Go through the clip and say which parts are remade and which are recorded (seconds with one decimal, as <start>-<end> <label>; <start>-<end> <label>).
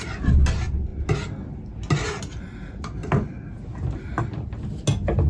0.0-5.3 recorded